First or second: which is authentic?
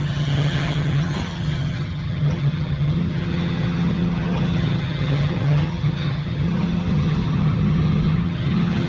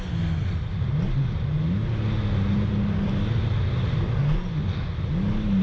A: second